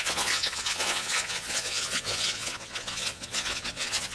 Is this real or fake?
fake